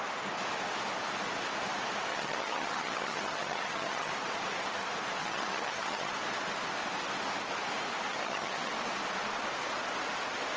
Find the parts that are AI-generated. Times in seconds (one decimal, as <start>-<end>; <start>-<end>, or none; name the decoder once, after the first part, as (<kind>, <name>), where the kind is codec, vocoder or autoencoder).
2.1-4.1 (vocoder, HiFi-GAN); 5.2-6.1; 8.1-8.7